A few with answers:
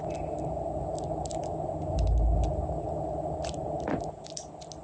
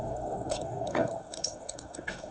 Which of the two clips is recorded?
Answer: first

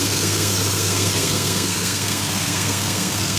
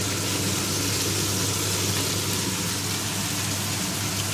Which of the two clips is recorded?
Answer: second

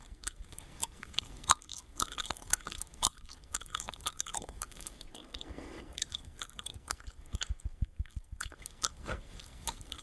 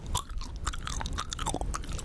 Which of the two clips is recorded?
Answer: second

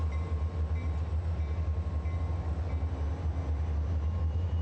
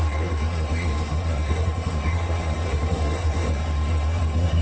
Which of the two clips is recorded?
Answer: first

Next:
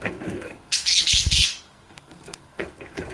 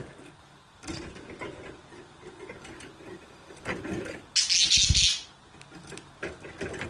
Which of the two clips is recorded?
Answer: second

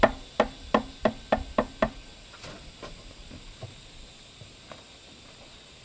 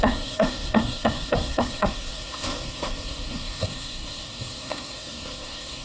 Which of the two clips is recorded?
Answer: first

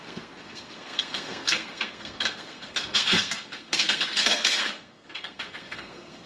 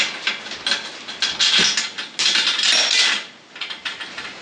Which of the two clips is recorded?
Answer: second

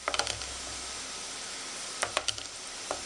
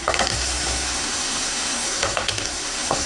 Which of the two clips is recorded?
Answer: first